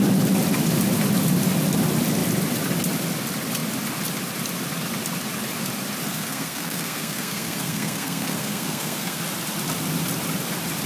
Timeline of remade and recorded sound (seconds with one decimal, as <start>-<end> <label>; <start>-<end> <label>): 0.0-6.1 recorded; 6.1-9.2 remade; 9.2-10.9 recorded